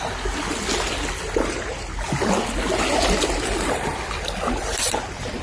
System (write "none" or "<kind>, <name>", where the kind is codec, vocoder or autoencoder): none